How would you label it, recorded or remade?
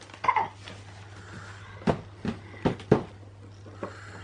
recorded